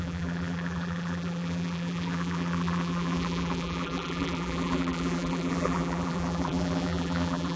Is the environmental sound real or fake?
fake